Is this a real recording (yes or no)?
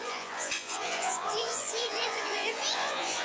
no